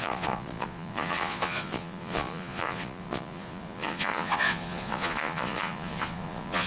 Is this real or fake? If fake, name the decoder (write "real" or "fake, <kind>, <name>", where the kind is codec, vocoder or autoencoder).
fake, vocoder, Vocos